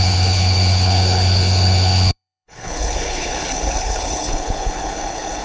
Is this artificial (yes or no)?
yes